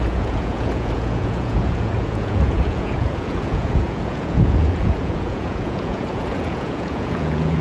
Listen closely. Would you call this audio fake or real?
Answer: fake